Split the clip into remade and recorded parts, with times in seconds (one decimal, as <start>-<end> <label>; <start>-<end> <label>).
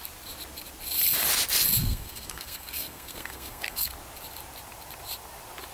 0.0-1.8 recorded; 1.8-3.9 remade; 3.9-5.7 recorded